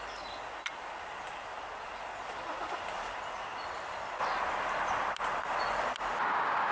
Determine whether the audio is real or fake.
real